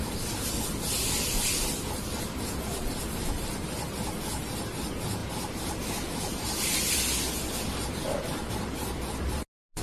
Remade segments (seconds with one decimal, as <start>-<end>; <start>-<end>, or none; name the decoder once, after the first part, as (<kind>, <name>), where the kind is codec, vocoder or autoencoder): none

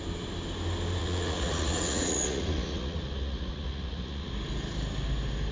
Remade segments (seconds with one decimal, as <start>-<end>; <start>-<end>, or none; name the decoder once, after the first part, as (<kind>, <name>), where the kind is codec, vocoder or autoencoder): 1.0-4.3 (vocoder, Vocos)

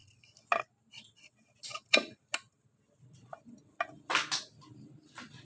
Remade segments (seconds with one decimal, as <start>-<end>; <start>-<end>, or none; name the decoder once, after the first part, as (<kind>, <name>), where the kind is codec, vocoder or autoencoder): none

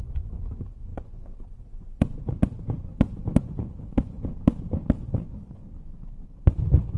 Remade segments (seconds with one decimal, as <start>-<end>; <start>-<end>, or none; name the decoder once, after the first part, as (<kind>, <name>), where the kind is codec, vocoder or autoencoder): 0.0-4.2 (vocoder, Vocos); 5.0-5.6

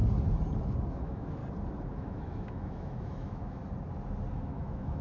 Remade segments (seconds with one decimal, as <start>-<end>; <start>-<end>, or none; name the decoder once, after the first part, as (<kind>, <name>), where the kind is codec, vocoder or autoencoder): 0.9-1.4 (autoencoder, DAC-VAE); 1.9-3.6; 4.3-5.0

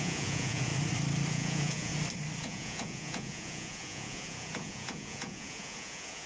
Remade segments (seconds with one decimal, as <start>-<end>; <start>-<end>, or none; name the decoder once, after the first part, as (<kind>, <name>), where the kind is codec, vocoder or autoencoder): 0.0-0.7 (vocoder, Vocos); 1.3-1.9; 2.4-6.3